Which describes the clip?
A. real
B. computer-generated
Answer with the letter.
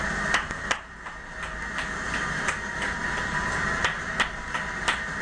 A